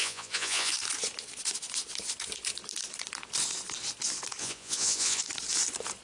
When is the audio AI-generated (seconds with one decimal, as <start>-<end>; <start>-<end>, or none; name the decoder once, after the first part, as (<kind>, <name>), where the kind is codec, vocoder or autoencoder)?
0.0-0.7 (vocoder, Vocos); 4.4-5.2